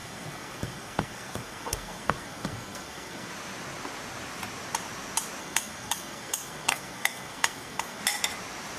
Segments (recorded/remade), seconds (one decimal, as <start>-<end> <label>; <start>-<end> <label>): 0.0-3.3 remade; 3.3-5.4 recorded; 5.4-8.0 remade; 8.0-8.8 recorded